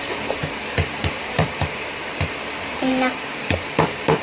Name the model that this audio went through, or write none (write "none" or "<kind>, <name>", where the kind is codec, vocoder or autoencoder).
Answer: vocoder, BigVGAN v2